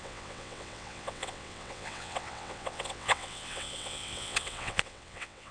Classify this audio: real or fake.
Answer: fake